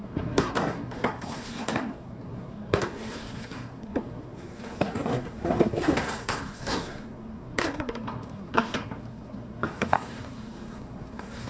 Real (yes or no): no